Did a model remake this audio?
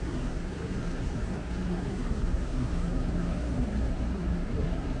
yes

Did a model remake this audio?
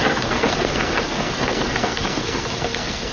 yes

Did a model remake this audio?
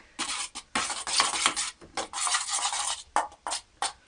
no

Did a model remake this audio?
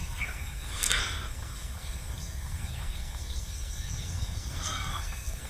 yes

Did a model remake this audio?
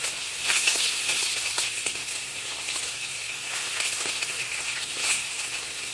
yes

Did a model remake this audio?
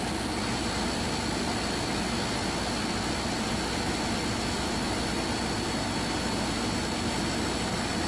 no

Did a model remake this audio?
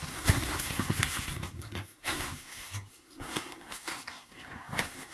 yes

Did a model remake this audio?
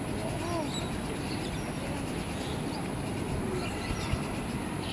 no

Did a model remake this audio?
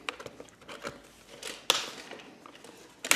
no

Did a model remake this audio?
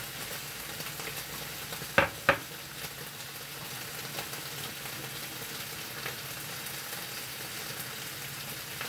no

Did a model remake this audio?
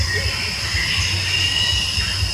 no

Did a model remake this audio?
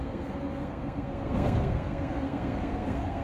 yes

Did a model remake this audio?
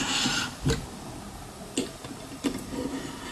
no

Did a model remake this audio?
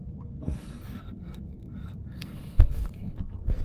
yes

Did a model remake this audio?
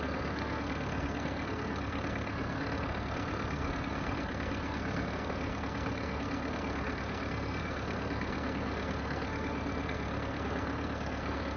yes